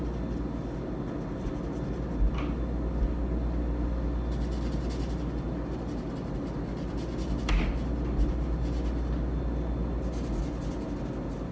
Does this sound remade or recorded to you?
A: recorded